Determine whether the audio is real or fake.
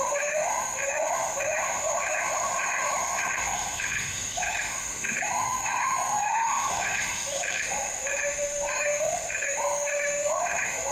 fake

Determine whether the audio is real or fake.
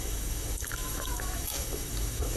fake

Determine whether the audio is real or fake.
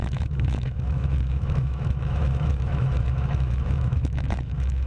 fake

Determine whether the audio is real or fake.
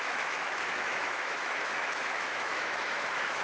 fake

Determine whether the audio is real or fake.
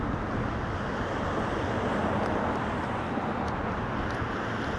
real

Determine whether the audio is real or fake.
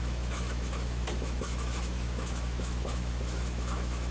fake